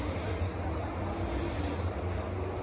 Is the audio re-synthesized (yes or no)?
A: no